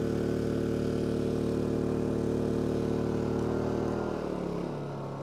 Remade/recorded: recorded